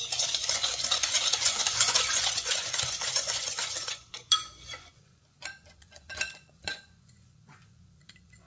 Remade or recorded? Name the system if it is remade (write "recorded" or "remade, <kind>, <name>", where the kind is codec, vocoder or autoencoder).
remade, vocoder, Vocos